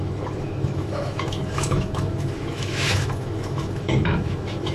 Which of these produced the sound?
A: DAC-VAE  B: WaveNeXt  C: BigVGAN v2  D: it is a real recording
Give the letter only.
A